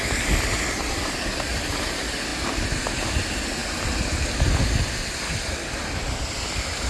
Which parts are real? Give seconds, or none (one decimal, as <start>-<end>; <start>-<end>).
0.0-6.9